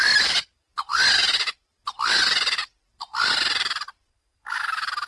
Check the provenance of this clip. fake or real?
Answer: real